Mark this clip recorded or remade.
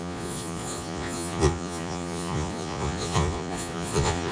remade